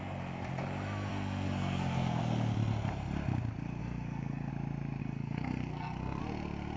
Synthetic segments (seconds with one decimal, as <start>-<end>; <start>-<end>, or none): 1.1-2.2; 3.8-4.5; 5.0-6.2